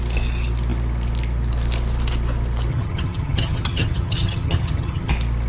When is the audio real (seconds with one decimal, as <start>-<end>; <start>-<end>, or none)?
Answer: 0.0-2.7; 5.1-5.5